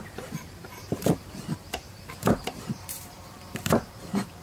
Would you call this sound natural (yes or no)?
no